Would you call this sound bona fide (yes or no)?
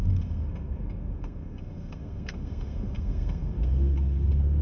no